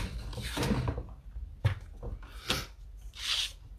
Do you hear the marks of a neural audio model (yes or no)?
no